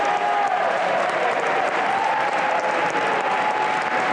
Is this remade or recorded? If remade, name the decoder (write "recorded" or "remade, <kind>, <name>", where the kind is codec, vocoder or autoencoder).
recorded